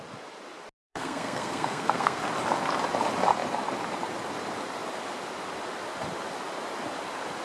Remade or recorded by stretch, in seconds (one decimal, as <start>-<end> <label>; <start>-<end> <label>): 0.0-0.8 recorded; 0.8-2.2 remade; 2.2-7.4 recorded